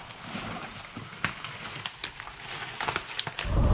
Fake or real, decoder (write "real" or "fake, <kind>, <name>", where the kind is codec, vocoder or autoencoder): real